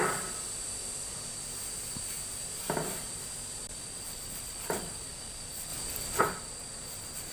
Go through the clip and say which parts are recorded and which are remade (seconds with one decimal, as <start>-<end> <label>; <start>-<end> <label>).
0.0-7.3 recorded

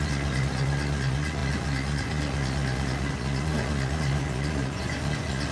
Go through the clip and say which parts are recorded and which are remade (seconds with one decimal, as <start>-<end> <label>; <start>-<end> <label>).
0.0-5.5 remade

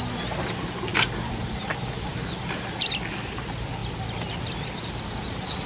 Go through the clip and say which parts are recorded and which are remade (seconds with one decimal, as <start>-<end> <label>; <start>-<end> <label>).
0.0-5.7 recorded

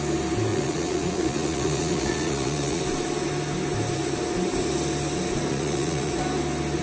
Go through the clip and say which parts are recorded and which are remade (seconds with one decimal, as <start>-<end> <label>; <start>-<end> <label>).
0.0-0.5 recorded; 0.5-2.8 remade; 2.8-5.5 recorded; 5.5-6.1 remade; 6.1-6.8 recorded